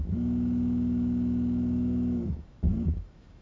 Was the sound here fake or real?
fake